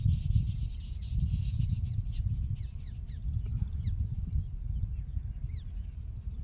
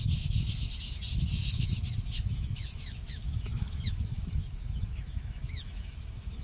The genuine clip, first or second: first